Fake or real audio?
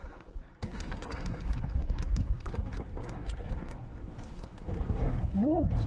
fake